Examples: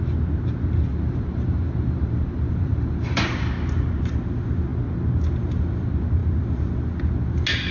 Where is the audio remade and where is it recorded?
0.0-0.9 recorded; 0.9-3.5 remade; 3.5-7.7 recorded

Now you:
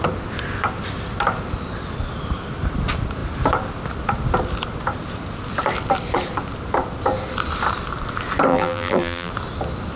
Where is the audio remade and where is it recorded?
0.0-8.5 recorded; 8.5-9.3 remade; 9.3-10.0 recorded

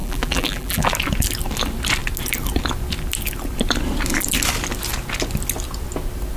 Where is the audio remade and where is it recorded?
0.0-0.9 remade; 0.9-6.4 recorded

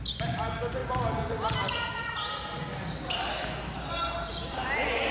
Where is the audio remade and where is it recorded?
0.0-0.8 remade; 0.8-3.9 recorded; 3.9-5.1 remade

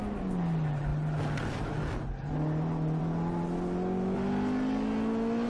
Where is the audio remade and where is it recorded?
0.0-5.5 recorded

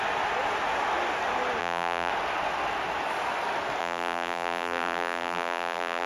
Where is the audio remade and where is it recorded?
0.0-1.6 recorded; 1.6-2.1 remade; 2.1-3.8 recorded; 3.8-6.1 remade

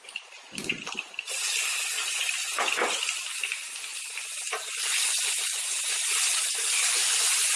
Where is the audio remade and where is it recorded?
0.0-0.6 recorded; 0.6-1.4 remade; 1.4-7.6 recorded

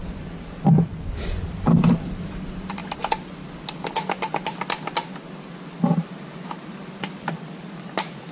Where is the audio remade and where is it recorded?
0.0-2.8 remade; 2.8-6.6 recorded; 6.6-8.3 remade